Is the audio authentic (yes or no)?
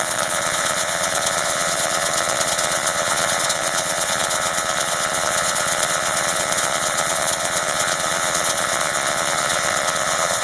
no